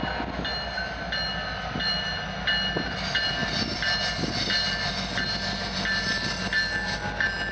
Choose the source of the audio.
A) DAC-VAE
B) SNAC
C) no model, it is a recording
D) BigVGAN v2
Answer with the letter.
C